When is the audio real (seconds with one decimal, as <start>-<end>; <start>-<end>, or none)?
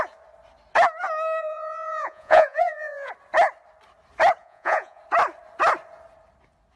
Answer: 0.0-1.4; 3.1-4.4; 5.0-6.8